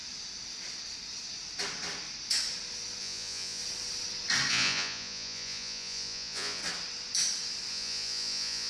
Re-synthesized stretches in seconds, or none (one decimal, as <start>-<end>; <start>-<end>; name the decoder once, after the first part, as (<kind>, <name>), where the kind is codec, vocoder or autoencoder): 3.0-3.6 (vocoder, Vocos); 4.5-6.6; 7.7-8.7